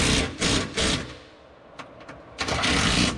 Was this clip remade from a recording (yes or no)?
no